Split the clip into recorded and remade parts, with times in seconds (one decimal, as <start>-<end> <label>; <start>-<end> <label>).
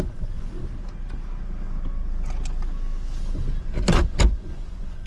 0.0-0.6 remade; 0.6-3.6 recorded; 3.6-5.1 remade